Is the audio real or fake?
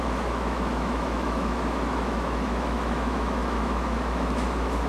fake